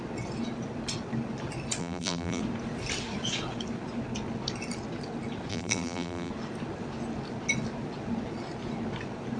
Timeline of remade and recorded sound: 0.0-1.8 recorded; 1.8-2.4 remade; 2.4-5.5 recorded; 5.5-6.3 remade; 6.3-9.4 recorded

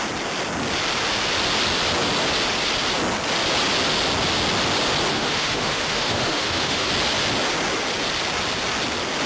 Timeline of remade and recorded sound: 0.0-5.1 recorded; 5.1-6.9 remade; 6.9-9.3 recorded

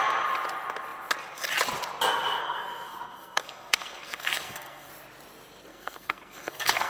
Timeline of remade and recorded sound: 0.0-2.4 recorded; 2.4-4.9 remade; 4.9-5.7 recorded; 5.7-6.9 remade

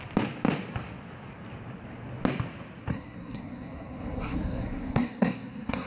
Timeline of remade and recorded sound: 0.0-2.9 recorded; 2.9-5.9 remade

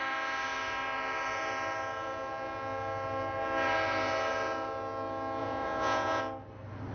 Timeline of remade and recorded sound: 0.0-5.4 recorded; 5.4-6.2 remade; 6.2-6.9 recorded

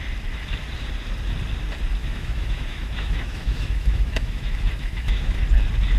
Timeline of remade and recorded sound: 0.0-2.0 recorded; 2.0-5.4 remade; 5.4-6.0 recorded

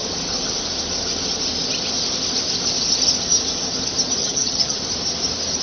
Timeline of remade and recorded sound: 0.0-4.2 recorded; 4.2-4.8 remade; 4.8-5.6 recorded

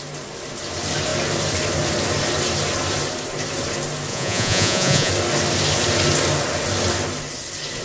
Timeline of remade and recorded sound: 0.0-4.1 recorded; 4.1-5.1 remade; 5.1-7.8 recorded